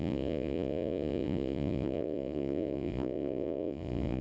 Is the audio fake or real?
fake